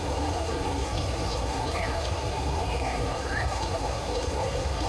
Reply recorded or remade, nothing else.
remade